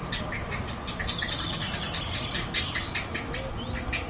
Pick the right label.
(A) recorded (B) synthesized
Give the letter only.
A